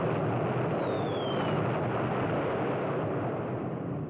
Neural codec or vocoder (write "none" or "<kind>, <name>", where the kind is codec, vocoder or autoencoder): none